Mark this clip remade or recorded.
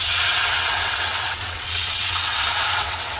remade